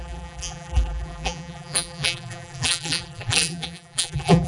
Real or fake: fake